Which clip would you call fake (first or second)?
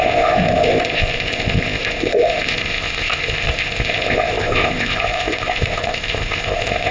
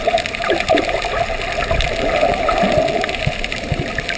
first